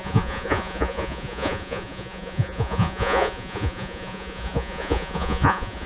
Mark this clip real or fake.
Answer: fake